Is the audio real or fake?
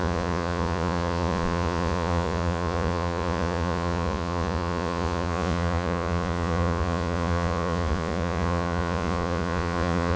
fake